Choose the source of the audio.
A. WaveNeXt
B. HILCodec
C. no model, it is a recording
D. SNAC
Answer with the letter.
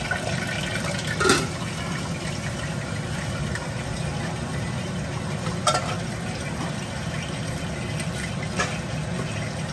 C